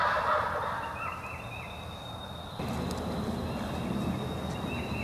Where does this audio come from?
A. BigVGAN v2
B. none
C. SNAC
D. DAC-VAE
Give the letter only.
B